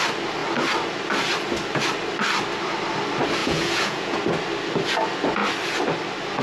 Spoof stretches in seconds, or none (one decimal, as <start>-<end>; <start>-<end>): 3.4-4.2